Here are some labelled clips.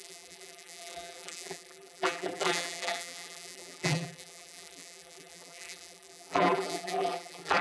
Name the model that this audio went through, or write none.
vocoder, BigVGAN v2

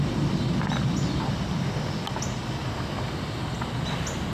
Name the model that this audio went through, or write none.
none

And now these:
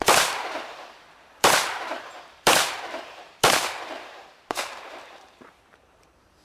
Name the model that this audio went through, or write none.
vocoder, BigVGAN v2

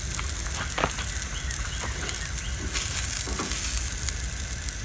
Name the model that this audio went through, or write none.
none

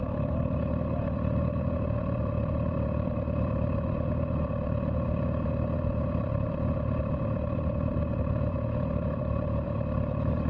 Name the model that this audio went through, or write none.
vocoder, BigVGAN v2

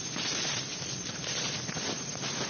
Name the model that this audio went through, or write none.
vocoder, BigVGAN v2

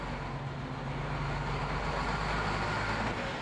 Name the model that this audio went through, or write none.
none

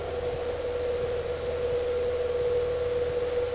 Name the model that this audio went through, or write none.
none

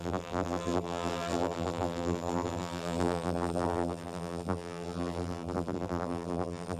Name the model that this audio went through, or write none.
vocoder, BigVGAN v2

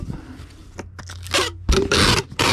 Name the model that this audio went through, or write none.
none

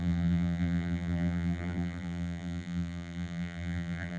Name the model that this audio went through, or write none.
vocoder, BigVGAN v2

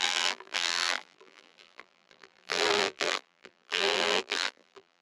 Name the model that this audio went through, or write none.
vocoder, BigVGAN v2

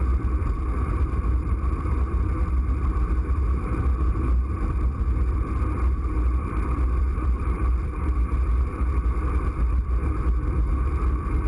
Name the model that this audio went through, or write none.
vocoder, BigVGAN v2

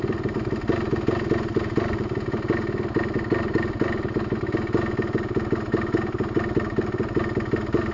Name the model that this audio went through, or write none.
none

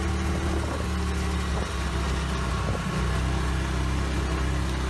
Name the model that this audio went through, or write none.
none